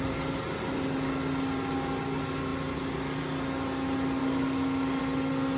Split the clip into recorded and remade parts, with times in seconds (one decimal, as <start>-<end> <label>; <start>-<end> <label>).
0.0-4.2 recorded; 4.2-5.0 remade; 5.0-5.6 recorded